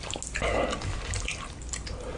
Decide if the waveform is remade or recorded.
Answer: recorded